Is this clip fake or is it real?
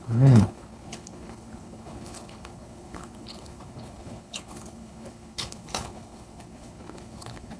fake